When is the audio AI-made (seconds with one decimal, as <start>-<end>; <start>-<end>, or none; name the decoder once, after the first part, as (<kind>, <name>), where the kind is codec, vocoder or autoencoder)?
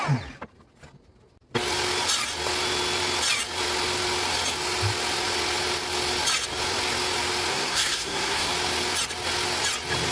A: 7.5-8.5 (codec, SNAC)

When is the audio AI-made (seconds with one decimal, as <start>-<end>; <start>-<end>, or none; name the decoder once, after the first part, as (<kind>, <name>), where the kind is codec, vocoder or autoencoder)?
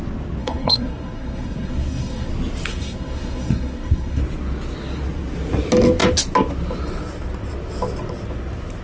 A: 0.4-2.3 (codec, SNAC); 2.7-4.2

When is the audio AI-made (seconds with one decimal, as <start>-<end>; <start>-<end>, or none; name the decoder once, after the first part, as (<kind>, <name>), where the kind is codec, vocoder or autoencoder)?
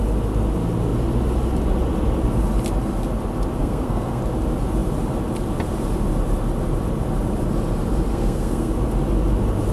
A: 3.6-4.2 (codec, SNAC); 8.1-8.7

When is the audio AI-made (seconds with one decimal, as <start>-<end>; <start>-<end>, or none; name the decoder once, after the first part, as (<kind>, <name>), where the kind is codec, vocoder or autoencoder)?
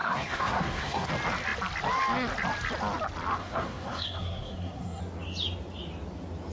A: 0.0-1.1 (codec, SNAC); 3.4-5.0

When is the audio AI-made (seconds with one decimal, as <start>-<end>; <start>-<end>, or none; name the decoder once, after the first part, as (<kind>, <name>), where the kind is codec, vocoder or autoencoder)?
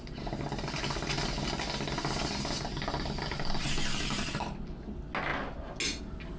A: none